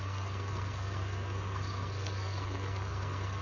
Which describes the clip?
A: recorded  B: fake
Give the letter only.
B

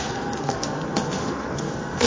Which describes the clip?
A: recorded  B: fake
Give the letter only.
B